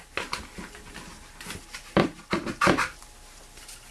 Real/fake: real